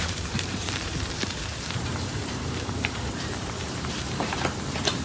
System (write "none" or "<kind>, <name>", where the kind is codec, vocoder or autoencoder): vocoder, BigVGAN v2